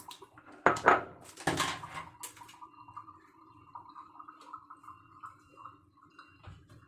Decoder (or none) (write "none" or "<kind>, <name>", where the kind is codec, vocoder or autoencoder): none